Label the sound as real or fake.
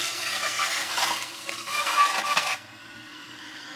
fake